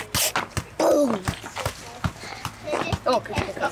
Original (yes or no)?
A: yes